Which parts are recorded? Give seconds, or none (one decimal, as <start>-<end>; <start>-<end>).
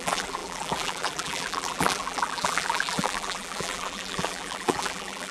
none